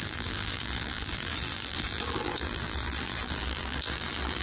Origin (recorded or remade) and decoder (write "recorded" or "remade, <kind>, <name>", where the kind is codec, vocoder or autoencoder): remade, vocoder, BigVGAN v2